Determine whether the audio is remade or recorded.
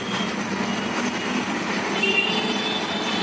recorded